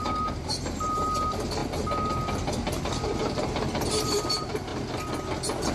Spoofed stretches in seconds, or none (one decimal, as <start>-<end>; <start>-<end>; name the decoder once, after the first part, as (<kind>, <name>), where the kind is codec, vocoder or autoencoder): 0.0-1.6 (vocoder, BigVGAN v2); 3.2-4.7